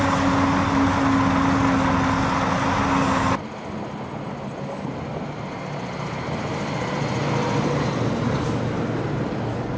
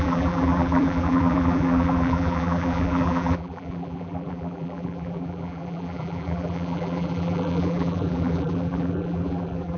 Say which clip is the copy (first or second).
second